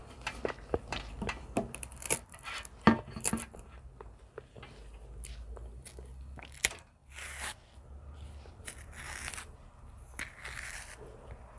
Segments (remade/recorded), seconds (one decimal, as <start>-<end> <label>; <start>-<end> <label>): 0.0-11.6 recorded